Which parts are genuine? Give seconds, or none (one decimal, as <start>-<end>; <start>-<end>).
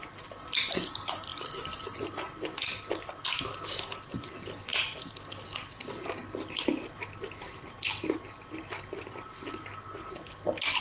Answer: 0.0-10.8